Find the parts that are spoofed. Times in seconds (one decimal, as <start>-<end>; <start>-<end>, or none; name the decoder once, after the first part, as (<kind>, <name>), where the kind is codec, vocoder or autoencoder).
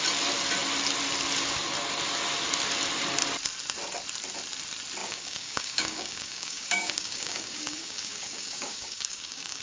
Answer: 5.0-9.6 (codec, DAC)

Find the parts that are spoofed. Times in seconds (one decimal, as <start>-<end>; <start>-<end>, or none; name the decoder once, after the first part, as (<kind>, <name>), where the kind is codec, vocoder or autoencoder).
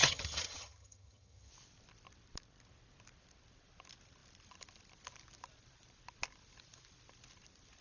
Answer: 0.0-1.5 (vocoder, HiFi-GAN)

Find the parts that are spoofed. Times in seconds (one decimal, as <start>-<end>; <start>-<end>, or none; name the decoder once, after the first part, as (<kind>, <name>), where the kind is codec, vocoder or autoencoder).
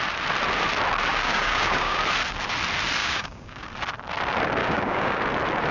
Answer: 1.1-2.0 (codec, DAC); 3.0-3.7; 4.6-5.2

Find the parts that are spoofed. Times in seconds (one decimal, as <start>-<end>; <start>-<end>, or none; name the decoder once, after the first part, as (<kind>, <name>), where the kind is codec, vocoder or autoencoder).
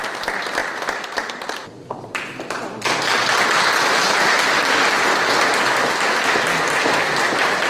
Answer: none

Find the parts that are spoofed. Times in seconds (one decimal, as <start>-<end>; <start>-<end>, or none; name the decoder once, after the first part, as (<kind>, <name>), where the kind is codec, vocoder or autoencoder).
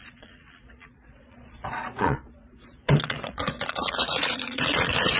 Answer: 0.0-5.2 (vocoder, Vocos)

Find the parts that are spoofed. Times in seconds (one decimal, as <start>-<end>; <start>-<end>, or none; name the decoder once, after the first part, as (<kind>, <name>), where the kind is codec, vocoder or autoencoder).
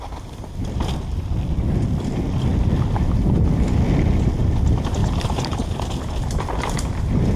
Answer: 0.0-2.5 (vocoder, BigVGAN v2); 4.2-7.4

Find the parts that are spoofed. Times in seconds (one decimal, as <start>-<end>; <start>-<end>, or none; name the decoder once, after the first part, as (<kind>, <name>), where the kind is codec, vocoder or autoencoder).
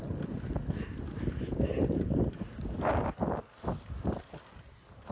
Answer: none